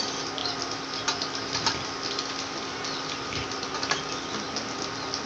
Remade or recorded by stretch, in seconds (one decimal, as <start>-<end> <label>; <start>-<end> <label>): 0.0-5.3 recorded